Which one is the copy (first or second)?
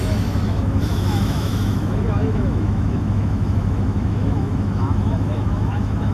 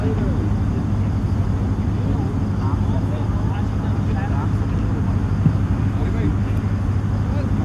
first